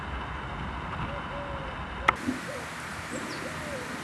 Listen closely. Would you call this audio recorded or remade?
recorded